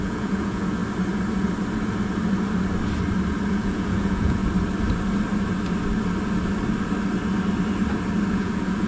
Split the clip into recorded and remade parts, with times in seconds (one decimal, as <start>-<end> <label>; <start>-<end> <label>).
0.0-0.8 remade; 0.8-3.5 recorded; 3.5-4.4 remade; 4.4-8.3 recorded; 8.3-8.9 remade